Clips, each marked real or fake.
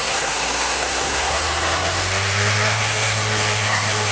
fake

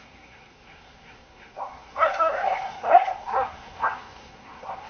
fake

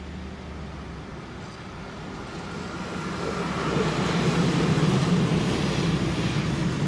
real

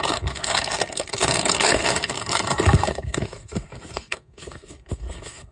fake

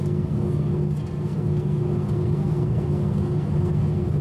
fake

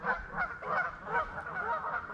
real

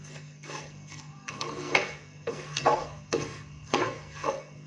fake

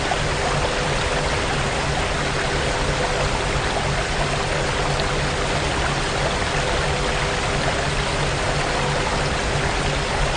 real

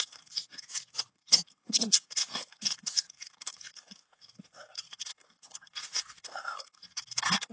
fake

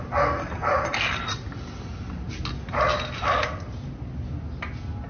real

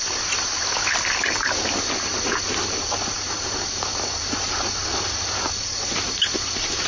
real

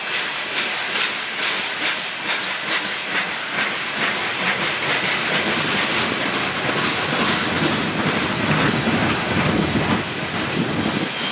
real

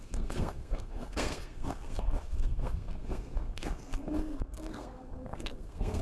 fake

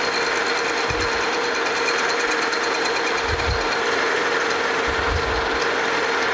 real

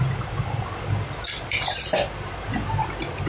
real